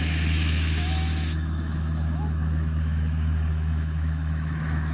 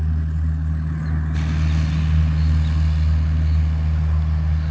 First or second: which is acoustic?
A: second